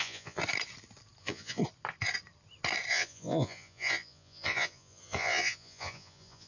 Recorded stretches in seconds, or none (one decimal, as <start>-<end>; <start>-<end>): 0.4-1.2; 1.6-2.9